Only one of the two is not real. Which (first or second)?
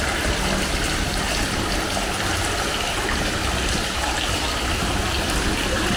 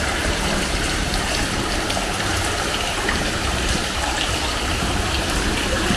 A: second